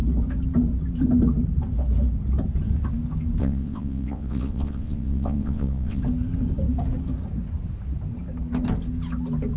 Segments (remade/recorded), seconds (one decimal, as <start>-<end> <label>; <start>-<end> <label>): 0.0-3.4 recorded; 3.4-6.0 remade; 6.0-9.6 recorded